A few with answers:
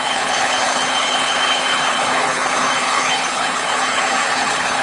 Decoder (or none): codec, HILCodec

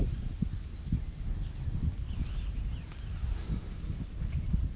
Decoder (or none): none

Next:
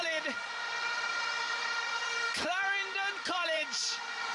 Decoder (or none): vocoder, BigVGAN v2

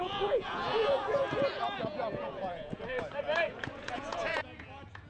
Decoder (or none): vocoder, Vocos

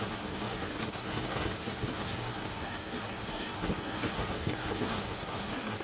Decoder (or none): codec, SNAC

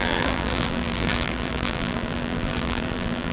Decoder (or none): vocoder, BigVGAN v2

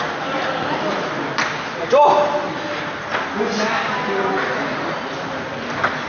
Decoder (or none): none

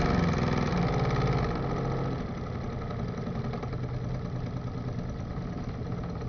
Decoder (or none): none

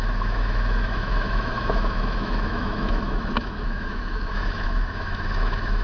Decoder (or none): autoencoder, DAC-VAE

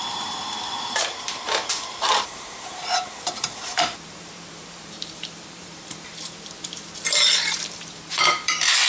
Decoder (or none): vocoder, BigVGAN v2